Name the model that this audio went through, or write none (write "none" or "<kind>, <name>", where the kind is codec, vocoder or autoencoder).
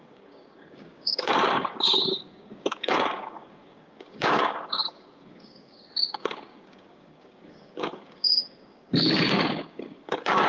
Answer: codec, DAC